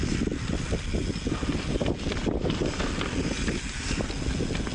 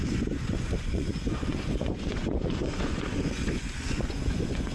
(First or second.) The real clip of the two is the first